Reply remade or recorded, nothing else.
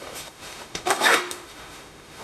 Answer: remade